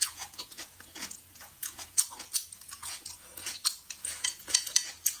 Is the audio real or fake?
fake